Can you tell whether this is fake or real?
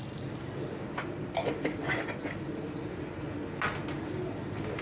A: real